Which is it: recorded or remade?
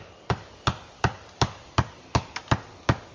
recorded